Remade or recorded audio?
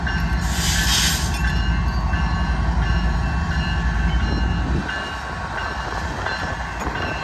recorded